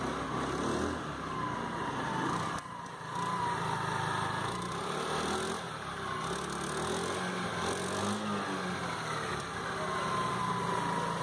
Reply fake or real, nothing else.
real